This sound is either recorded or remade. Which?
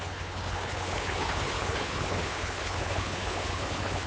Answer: remade